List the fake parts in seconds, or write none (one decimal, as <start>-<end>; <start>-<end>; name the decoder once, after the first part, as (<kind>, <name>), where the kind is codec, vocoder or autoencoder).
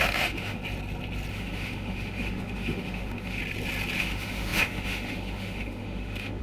0.0-0.6 (autoencoder, DAC-VAE); 1.3-3.4; 4.0-6.4